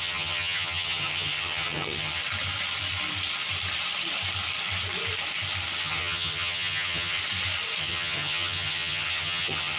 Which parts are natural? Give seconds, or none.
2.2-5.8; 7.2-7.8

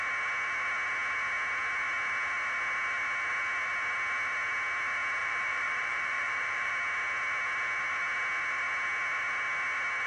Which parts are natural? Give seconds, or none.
0.0-5.2; 6.7-10.1

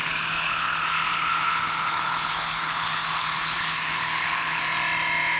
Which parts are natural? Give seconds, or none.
4.6-5.4

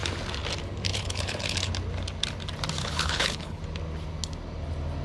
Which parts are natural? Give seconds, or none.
0.0-0.9; 1.7-2.8; 3.6-5.0

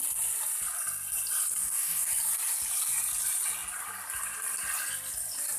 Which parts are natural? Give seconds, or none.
0.0-1.6; 2.1-5.6

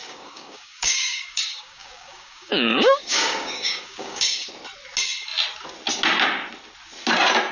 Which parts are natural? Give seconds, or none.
4.5-7.5